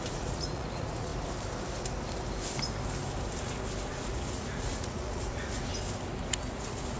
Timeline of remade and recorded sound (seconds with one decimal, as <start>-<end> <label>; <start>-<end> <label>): 0.0-1.1 remade; 1.1-3.9 recorded; 3.9-5.7 remade; 5.7-6.5 recorded; 6.5-7.0 remade